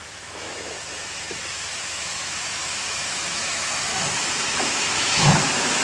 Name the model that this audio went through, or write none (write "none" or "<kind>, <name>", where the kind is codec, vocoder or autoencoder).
autoencoder, DAC-VAE